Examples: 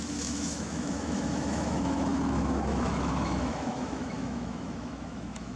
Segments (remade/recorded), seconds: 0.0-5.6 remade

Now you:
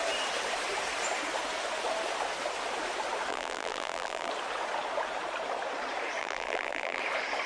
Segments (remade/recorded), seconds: 0.0-3.3 recorded; 3.3-4.3 remade; 4.3-6.2 recorded; 6.2-7.0 remade; 7.0-7.5 recorded

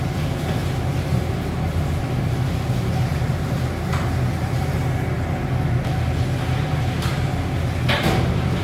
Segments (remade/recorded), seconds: 0.0-8.6 recorded

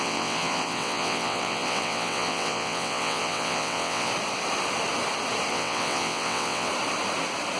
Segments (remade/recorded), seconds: 0.0-4.1 remade; 4.1-5.5 recorded; 5.5-6.7 remade; 6.7-7.6 recorded

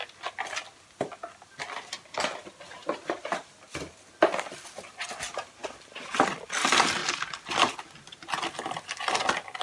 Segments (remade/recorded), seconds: 0.0-9.6 recorded

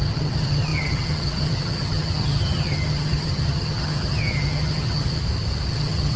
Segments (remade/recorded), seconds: 0.0-5.2 remade; 5.2-5.7 recorded; 5.7-6.2 remade